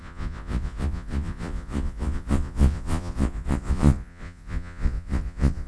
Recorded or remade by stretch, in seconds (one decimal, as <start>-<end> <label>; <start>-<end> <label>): 0.0-5.7 remade